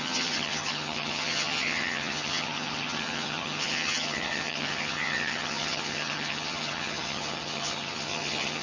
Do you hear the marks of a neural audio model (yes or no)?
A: yes